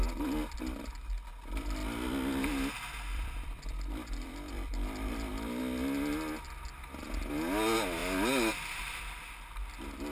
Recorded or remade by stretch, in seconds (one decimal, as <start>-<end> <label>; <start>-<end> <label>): 0.0-3.1 recorded; 3.1-5.6 remade; 5.6-10.1 recorded